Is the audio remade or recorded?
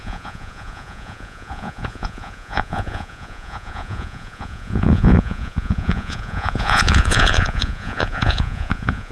remade